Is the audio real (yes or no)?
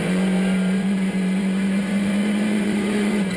no